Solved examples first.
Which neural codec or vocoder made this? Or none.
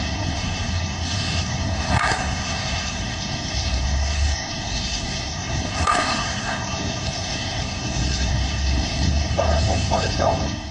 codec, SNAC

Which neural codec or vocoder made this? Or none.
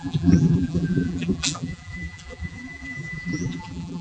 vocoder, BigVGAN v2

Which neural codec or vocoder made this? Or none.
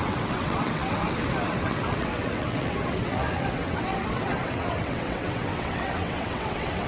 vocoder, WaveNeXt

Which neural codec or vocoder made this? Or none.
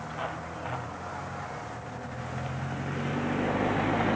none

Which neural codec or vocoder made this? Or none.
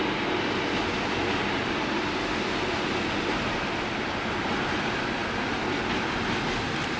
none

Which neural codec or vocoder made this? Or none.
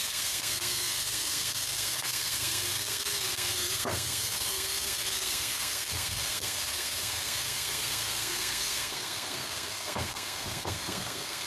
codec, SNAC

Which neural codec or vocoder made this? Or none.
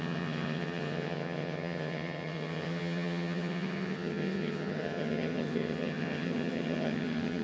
vocoder, HiFi-GAN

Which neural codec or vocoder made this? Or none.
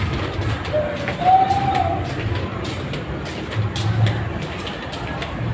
none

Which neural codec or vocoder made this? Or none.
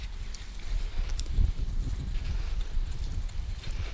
vocoder, BigVGAN v2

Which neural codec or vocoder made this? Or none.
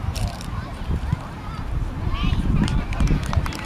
vocoder, BigVGAN v2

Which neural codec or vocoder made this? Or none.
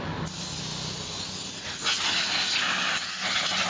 none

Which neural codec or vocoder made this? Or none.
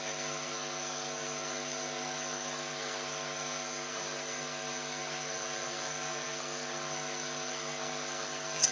codec, SNAC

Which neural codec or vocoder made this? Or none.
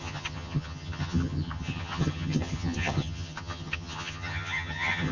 vocoder, HiFi-GAN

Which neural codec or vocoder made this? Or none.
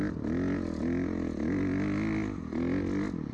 none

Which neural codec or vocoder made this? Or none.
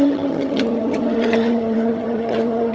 vocoder, HiFi-GAN